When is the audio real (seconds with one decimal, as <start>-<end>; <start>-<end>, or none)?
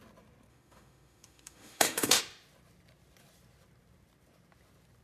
0.0-0.5; 2.2-5.0